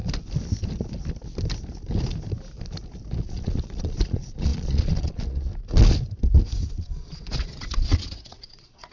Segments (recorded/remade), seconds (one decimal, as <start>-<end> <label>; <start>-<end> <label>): 0.0-3.3 recorded; 3.3-5.5 remade; 5.5-6.7 recorded; 6.7-8.9 remade